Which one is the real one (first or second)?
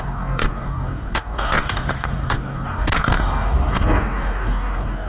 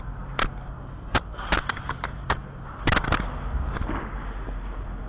second